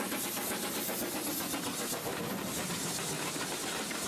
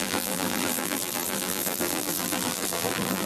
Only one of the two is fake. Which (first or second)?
second